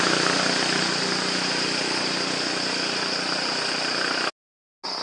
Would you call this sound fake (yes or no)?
no